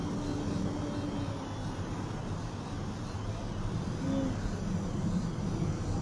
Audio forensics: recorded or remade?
recorded